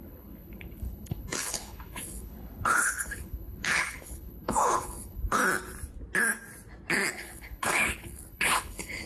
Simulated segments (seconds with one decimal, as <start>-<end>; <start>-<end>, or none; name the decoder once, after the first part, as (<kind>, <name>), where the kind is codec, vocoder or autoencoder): 0.0-5.4 (codec, HILCodec); 7.1-9.1